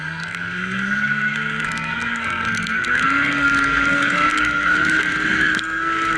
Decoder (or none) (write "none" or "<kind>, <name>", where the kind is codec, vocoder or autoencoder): codec, SNAC